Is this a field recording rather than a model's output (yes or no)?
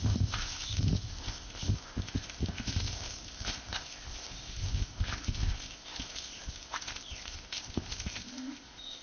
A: no